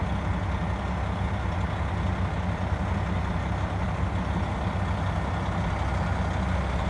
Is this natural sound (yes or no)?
yes